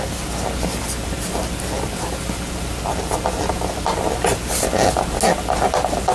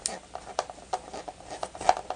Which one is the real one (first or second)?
first